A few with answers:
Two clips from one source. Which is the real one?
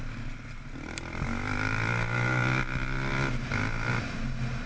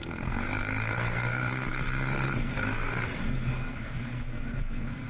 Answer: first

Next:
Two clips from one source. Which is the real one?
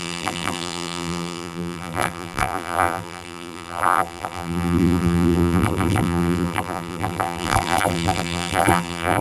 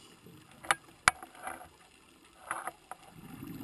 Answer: second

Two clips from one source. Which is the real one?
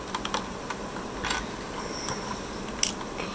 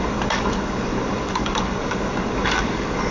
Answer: first